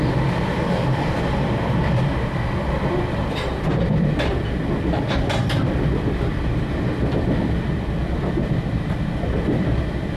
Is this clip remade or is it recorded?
remade